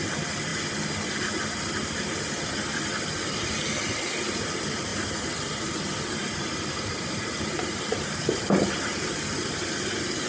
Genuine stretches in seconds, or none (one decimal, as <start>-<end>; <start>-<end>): 0.0-6.2; 8.6-10.3